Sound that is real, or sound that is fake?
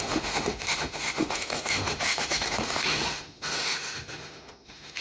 fake